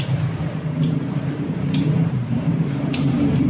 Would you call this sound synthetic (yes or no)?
yes